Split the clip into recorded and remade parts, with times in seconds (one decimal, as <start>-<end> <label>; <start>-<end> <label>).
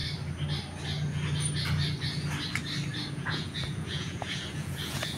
0.0-3.1 recorded; 3.1-5.2 remade